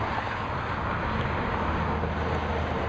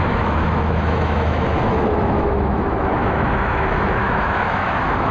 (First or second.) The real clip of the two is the first